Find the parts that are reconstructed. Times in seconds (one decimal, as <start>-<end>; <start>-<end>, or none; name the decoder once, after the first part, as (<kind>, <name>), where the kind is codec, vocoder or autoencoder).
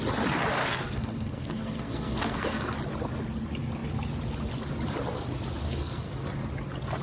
0.6-2.7 (codec, SNAC); 5.6-6.1